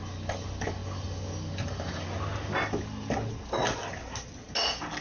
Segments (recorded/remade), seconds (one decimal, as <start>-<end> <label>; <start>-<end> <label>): 0.0-5.0 recorded